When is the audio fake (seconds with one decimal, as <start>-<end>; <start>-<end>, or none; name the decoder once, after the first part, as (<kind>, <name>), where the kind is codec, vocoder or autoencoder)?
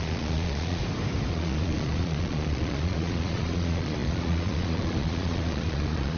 0.0-0.8 (vocoder, Vocos); 1.3-6.2